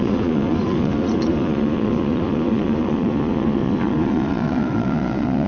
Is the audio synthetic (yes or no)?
yes